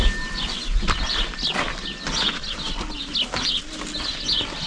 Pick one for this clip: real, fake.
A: real